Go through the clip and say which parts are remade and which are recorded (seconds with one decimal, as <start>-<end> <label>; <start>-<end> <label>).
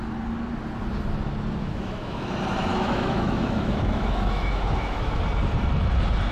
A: 0.0-1.6 recorded; 1.6-2.3 remade; 2.3-2.7 recorded; 2.7-5.2 remade; 5.2-6.3 recorded